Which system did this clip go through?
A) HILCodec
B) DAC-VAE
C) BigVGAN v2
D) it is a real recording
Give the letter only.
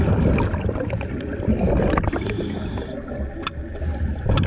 D